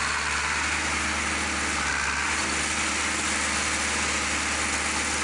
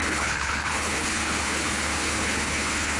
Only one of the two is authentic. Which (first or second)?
first